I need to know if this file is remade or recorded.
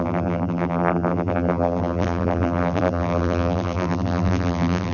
remade